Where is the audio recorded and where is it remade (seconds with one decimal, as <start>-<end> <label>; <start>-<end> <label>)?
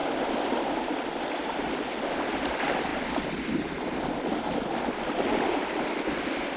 0.0-6.6 recorded